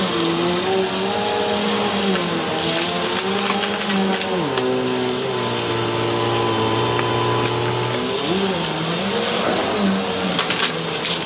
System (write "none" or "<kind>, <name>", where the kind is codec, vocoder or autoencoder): none